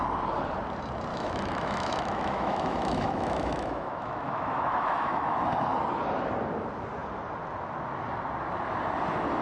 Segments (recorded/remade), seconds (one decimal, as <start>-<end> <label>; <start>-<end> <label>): 0.0-1.1 recorded; 1.1-5.4 remade; 5.4-9.4 recorded